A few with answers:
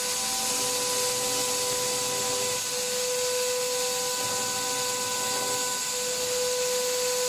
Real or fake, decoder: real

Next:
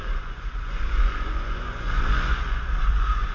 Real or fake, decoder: fake, vocoder, Vocos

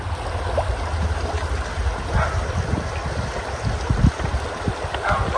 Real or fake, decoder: real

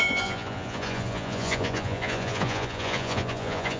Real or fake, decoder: fake, vocoder, Vocos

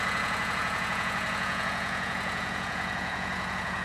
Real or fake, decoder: fake, vocoder, Vocos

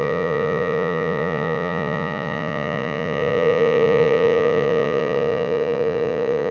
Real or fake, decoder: fake, vocoder, Vocos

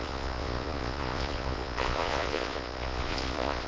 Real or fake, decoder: fake, vocoder, Vocos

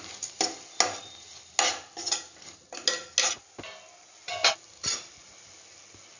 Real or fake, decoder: real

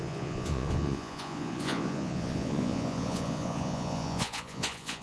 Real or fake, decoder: fake, vocoder, Vocos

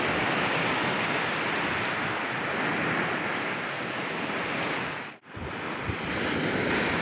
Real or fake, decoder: real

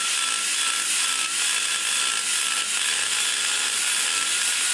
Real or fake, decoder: real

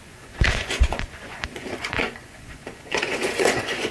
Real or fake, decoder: fake, vocoder, Vocos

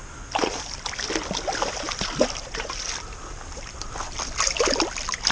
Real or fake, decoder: real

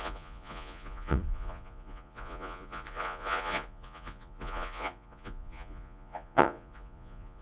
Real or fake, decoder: fake, vocoder, Vocos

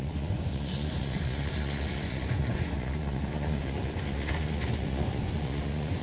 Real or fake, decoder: fake, vocoder, Vocos